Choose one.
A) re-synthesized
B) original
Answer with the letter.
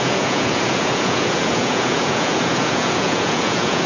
A